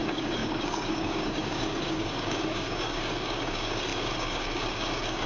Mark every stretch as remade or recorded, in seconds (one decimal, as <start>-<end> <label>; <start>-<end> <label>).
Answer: 0.0-5.3 remade